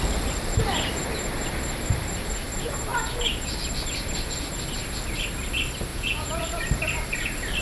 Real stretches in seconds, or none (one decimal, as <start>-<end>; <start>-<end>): 0.0-5.9; 6.4-7.6